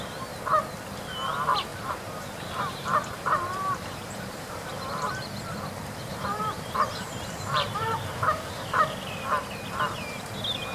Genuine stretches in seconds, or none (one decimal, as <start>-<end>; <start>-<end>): 0.0-1.7; 5.1-6.1; 8.8-10.7